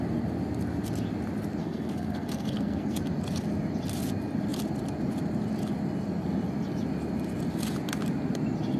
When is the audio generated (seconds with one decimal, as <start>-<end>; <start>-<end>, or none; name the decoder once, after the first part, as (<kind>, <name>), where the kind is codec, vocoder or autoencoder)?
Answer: 1.6-3.0 (codec, SNAC)